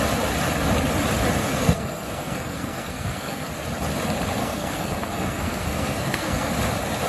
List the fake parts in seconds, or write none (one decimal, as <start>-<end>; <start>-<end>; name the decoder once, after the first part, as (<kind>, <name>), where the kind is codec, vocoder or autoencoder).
1.4-3.5 (codec, SNAC); 4.4-6.5